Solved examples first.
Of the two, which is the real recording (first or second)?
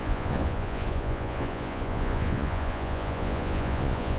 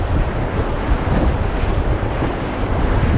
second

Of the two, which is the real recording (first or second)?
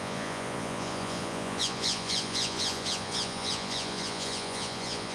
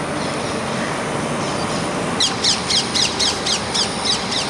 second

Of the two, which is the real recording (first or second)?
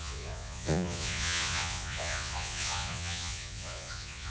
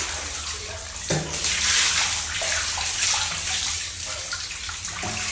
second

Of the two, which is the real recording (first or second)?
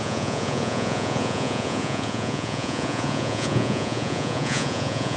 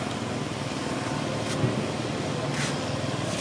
second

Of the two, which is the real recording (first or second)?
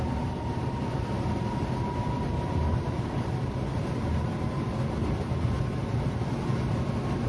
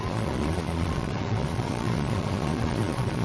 first